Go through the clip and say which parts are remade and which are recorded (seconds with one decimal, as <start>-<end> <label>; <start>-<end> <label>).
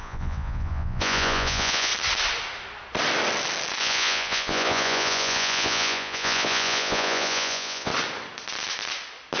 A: 0.0-1.9 remade; 1.9-3.8 recorded; 3.8-7.9 remade; 7.9-9.4 recorded